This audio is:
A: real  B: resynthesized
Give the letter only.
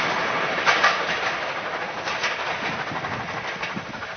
A